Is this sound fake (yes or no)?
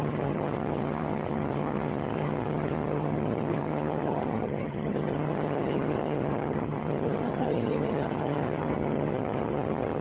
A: yes